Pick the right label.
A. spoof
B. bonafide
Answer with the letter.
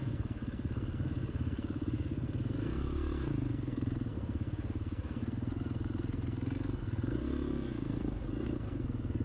A